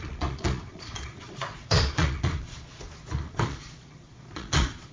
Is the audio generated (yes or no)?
yes